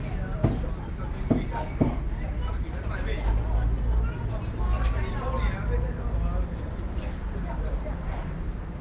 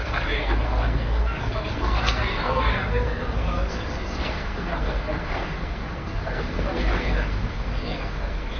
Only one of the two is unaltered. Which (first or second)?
first